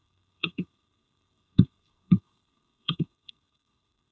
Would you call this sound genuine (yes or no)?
no